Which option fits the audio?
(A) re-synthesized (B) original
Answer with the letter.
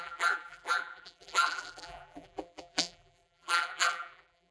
A